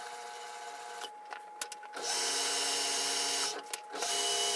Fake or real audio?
real